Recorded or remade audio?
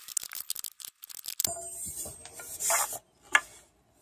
recorded